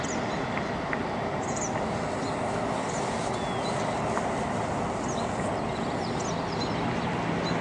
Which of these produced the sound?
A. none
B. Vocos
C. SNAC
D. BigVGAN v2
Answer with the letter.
A